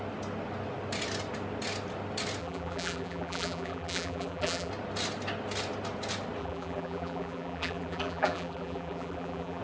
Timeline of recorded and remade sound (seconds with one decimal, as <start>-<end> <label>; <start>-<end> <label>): 0.0-2.4 recorded; 2.4-4.7 remade; 4.7-6.4 recorded; 6.4-9.6 remade